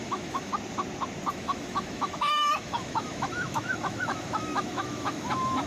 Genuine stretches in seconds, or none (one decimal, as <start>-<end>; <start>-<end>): 0.5-1.3